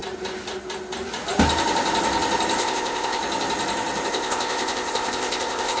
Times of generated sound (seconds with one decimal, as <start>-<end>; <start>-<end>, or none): 2.6-3.2; 4.1-5.8